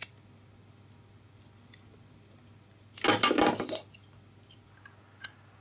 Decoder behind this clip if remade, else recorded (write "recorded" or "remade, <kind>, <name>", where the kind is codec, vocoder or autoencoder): recorded